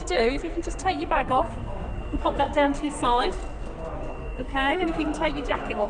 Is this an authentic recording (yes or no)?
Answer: no